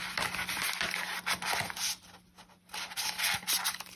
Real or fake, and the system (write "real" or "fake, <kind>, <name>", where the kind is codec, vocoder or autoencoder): real